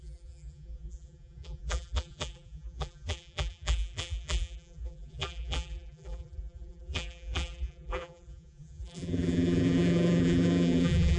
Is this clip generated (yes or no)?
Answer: yes